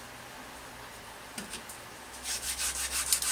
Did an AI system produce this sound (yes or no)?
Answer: no